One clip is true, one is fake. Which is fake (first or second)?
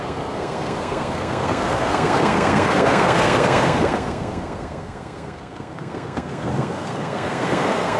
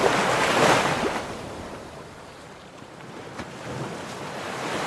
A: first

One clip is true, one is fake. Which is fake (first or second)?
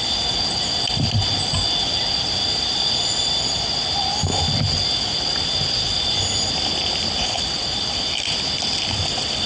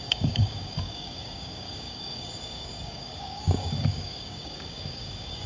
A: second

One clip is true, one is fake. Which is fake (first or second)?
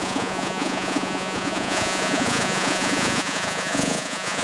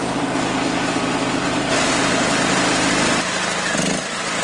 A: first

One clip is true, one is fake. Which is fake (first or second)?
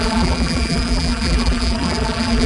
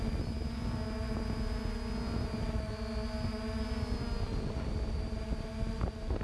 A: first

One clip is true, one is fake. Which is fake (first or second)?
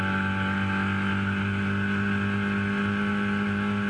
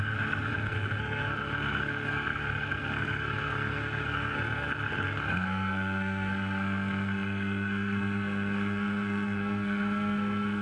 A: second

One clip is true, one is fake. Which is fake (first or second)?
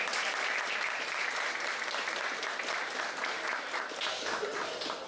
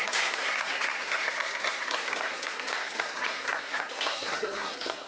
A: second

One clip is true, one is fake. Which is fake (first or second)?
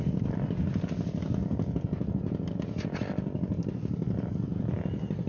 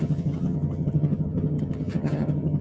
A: second